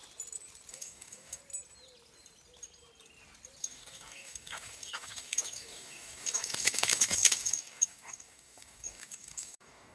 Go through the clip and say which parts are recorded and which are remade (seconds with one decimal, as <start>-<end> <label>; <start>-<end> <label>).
0.0-0.7 recorded; 0.7-1.4 remade; 1.4-3.6 recorded; 3.6-9.9 remade